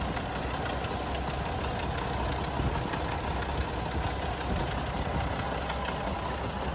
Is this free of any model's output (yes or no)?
yes